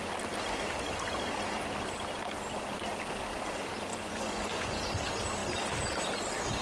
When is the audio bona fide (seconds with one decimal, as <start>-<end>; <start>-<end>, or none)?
0.0-3.9; 4.8-6.6